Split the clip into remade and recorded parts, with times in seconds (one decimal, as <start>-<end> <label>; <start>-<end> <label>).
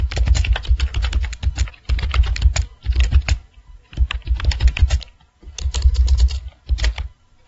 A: 0.0-3.4 recorded; 3.4-6.7 remade; 6.7-7.5 recorded